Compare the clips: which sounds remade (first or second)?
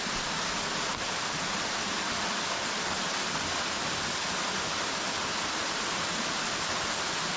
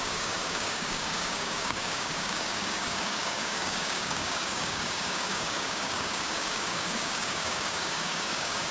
second